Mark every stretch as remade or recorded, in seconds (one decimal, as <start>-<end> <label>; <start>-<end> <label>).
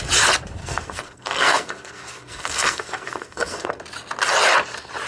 0.0-0.6 recorded; 0.6-3.7 remade; 3.7-5.1 recorded